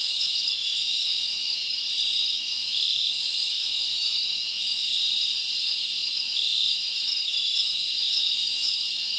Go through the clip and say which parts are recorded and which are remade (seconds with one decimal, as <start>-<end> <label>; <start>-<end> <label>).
0.0-1.6 remade; 1.6-2.2 recorded; 2.2-4.9 remade; 4.9-5.6 recorded; 5.6-9.2 remade